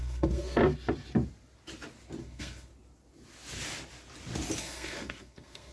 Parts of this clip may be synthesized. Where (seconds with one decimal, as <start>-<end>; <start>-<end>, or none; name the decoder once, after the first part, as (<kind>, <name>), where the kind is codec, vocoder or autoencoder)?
0.0-0.6 (codec, SNAC); 2.2-2.7; 4.6-5.7